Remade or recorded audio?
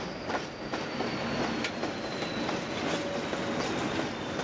recorded